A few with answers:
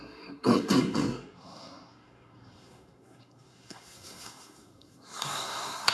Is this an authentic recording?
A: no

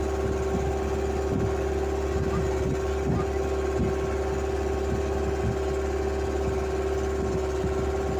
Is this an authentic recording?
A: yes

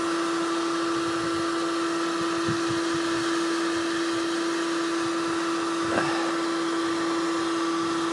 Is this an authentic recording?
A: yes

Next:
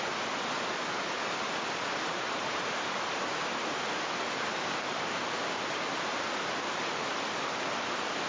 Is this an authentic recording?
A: yes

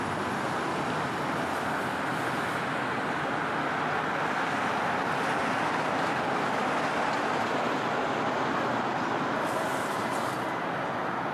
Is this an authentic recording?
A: yes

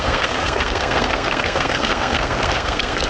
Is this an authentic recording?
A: no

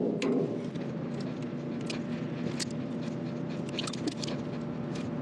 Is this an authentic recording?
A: yes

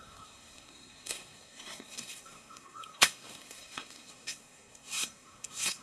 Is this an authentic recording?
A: no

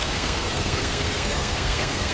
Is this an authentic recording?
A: no